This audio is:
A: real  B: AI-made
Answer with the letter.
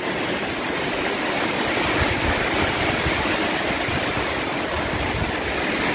A